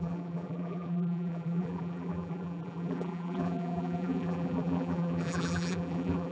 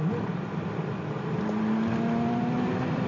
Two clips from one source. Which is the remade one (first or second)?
first